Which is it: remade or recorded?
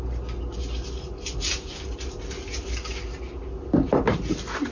recorded